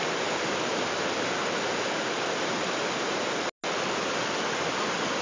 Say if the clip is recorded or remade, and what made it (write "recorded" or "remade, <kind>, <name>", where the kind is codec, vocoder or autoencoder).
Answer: recorded